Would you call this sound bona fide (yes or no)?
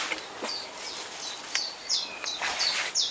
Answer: yes